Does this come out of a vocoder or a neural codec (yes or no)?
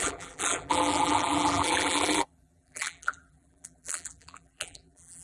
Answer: yes